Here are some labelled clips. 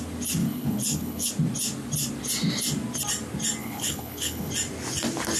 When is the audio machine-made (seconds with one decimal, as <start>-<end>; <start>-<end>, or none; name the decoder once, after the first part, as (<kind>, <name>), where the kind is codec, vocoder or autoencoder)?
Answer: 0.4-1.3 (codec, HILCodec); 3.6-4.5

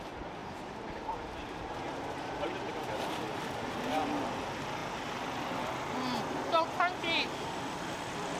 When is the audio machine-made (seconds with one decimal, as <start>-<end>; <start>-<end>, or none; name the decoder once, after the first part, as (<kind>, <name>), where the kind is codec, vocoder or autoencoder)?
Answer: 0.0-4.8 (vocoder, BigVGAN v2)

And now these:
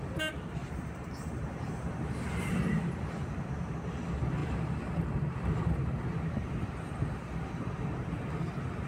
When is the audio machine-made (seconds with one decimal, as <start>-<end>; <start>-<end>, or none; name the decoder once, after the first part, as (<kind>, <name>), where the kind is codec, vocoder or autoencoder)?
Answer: 0.6-2.8 (vocoder, BigVGAN v2); 4.4-6.0; 6.4-8.9

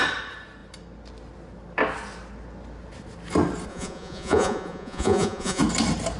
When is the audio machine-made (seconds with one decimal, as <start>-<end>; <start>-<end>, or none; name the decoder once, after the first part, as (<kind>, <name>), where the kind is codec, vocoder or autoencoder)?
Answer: 3.7-5.6 (vocoder, Vocos)

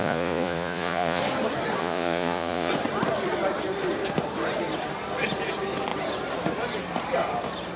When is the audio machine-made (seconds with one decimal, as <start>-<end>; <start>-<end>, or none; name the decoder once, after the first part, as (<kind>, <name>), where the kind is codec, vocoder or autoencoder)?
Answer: 0.0-1.2 (vocoder, Vocos); 1.8-2.7

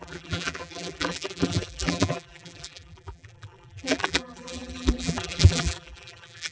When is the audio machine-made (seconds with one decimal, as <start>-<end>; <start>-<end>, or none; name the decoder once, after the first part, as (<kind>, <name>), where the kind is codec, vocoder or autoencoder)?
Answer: 0.0-6.5 (vocoder, BigVGAN v2)

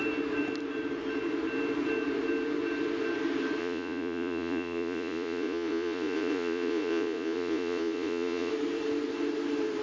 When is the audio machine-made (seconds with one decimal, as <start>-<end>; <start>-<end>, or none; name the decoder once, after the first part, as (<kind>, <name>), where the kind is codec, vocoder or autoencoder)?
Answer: 3.6-8.5 (vocoder, Vocos)

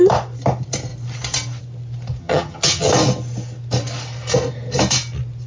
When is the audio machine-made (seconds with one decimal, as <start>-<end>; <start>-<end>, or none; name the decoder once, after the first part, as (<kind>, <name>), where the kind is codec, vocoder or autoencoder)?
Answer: 2.2-2.9 (vocoder, HiFi-GAN)